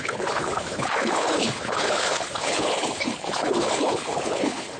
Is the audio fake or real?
fake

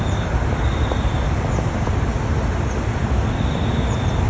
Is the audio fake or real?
real